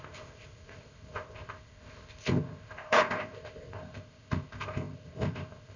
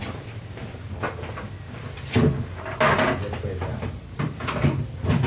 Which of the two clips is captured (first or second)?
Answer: second